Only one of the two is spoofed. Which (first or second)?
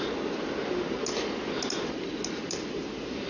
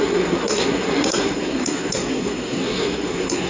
second